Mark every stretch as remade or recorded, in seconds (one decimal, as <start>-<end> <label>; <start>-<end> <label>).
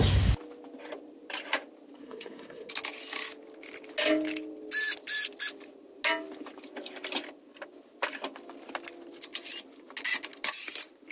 0.0-2.0 recorded; 2.0-2.7 remade; 2.7-11.1 recorded